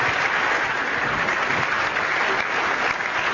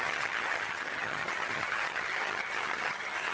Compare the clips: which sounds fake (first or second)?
second